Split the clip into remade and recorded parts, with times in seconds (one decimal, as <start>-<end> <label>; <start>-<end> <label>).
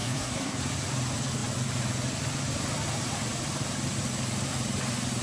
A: 0.0-0.6 remade; 0.6-5.2 recorded